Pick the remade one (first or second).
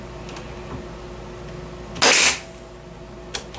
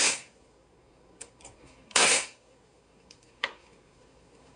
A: second